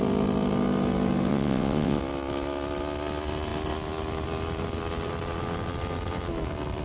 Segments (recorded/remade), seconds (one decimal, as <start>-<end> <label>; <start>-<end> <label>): 0.0-1.3 recorded; 1.3-2.0 remade; 2.0-6.8 recorded